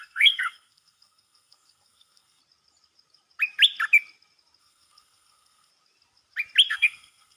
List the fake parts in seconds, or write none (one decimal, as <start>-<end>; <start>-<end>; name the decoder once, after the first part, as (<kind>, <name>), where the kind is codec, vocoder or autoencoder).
0.0-2.4 (codec, SNAC); 4.6-5.7; 6.7-7.4